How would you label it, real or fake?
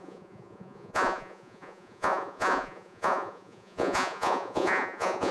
fake